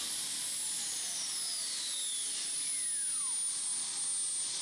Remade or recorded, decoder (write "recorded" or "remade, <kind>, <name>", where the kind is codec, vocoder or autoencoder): recorded